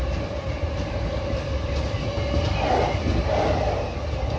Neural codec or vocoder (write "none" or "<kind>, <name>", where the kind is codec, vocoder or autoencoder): none